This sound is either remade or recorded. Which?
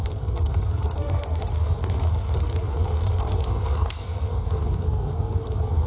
remade